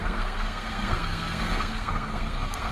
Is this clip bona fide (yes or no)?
no